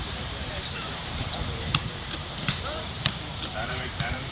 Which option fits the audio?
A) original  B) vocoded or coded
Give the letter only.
B